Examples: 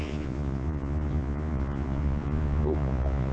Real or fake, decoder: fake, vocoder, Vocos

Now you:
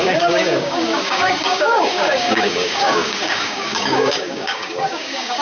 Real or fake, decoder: fake, codec, DAC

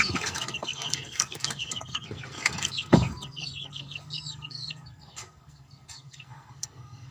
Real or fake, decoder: fake, codec, SNAC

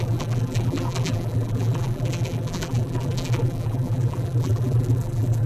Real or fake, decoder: fake, vocoder, BigVGAN v2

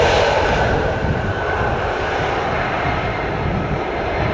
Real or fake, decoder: fake, vocoder, BigVGAN v2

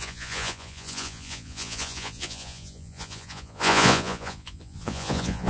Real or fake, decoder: fake, vocoder, Vocos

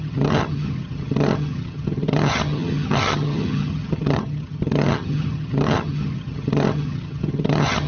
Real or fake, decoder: fake, vocoder, HiFi-GAN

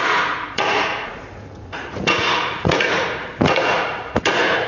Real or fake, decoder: fake, vocoder, Vocos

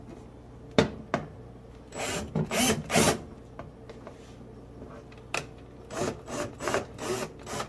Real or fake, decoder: real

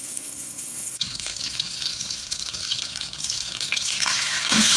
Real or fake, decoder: fake, codec, SNAC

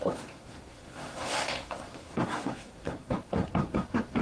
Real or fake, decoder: fake, codec, SNAC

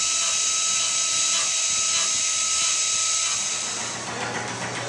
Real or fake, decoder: real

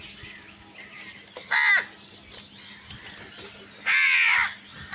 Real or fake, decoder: real